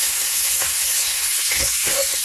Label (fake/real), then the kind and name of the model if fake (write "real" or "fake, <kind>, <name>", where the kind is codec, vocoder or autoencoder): fake, codec, SNAC